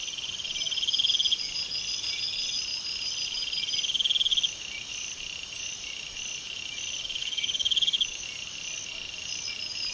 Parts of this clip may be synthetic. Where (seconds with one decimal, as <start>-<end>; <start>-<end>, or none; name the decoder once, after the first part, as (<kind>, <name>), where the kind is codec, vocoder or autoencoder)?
7.2-8.2 (codec, DAC)